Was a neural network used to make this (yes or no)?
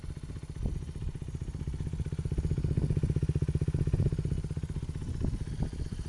no